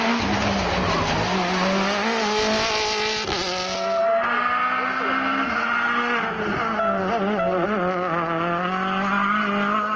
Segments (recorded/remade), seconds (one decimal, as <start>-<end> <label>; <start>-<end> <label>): 0.0-10.0 recorded